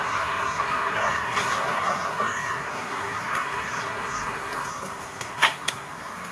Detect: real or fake fake